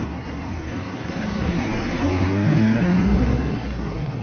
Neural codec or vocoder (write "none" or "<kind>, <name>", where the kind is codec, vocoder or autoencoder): codec, SNAC